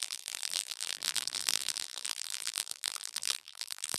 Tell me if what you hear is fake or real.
fake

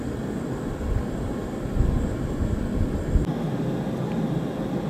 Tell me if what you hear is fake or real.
real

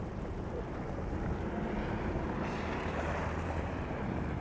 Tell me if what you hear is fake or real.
fake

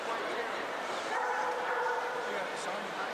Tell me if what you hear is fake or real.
fake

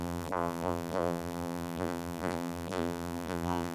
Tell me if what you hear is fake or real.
fake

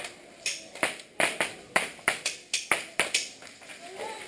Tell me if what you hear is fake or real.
real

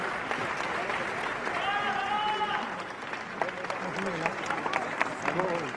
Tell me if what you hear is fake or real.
real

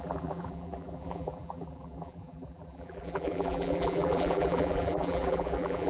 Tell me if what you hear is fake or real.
fake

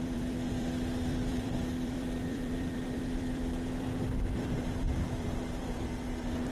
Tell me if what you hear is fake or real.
fake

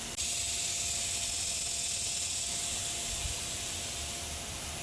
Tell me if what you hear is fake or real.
real